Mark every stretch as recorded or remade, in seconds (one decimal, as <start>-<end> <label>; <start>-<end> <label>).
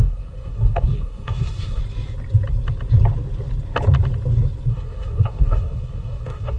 0.0-1.8 remade; 1.8-4.7 recorded; 4.7-6.6 remade